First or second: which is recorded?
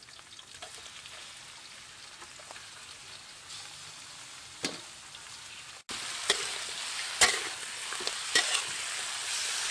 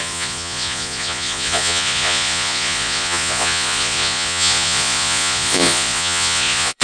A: first